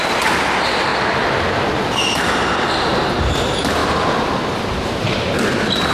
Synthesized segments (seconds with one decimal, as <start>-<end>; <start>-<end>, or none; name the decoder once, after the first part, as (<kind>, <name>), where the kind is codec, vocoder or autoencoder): 0.9-2.7 (vocoder, BigVGAN v2)